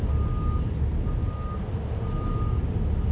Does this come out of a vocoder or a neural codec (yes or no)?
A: no